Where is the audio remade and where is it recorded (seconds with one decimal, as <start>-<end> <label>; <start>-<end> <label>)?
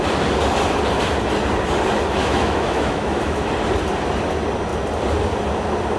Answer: 0.0-2.2 recorded; 2.2-3.5 remade; 3.5-6.0 recorded